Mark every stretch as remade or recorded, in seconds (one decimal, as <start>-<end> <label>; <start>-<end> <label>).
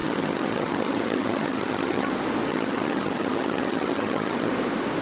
0.0-2.1 remade; 2.1-2.5 recorded; 2.5-4.5 remade; 4.5-5.0 recorded